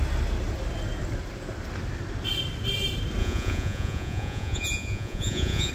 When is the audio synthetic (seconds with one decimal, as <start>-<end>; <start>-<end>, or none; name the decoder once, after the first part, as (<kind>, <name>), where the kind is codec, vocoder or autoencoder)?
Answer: 3.2-5.7 (vocoder, Vocos)